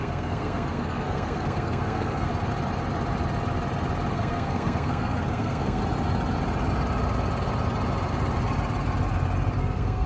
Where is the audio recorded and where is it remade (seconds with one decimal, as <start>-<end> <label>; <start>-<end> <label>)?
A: 0.0-2.3 remade; 2.3-4.1 recorded; 4.1-5.8 remade; 5.8-9.6 recorded; 9.6-10.1 remade